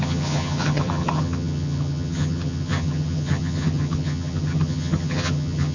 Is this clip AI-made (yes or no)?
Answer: yes